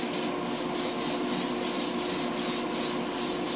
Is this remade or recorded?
recorded